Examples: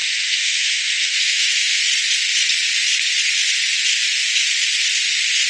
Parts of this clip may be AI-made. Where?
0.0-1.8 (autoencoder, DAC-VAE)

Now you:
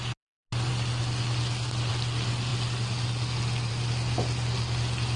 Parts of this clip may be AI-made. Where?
none